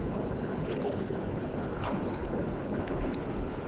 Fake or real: fake